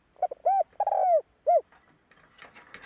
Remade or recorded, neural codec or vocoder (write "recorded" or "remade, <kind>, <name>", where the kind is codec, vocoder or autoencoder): recorded